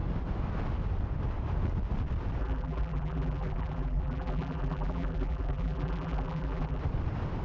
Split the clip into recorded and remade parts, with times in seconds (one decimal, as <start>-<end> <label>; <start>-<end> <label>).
0.0-2.4 recorded; 2.4-6.8 remade; 6.8-7.4 recorded